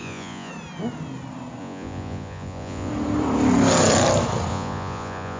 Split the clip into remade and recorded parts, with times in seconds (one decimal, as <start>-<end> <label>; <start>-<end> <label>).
0.0-0.5 remade; 0.5-1.6 recorded; 1.6-2.9 remade; 2.9-4.5 recorded; 4.5-5.4 remade